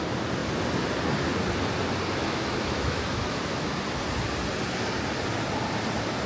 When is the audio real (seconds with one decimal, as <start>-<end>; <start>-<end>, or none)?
0.0-2.2; 3.8-6.3